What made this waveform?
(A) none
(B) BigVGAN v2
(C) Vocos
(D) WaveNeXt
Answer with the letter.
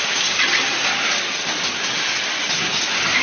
A